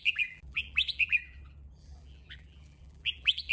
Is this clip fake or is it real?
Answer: fake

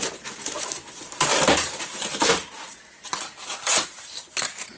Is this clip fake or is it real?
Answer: fake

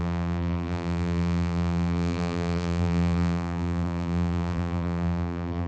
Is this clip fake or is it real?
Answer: fake